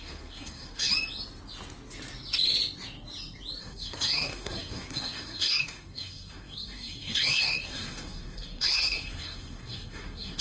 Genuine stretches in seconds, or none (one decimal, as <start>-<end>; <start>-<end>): 0.9-3.6